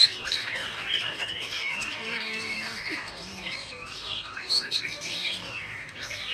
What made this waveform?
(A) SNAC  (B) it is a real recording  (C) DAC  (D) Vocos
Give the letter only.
C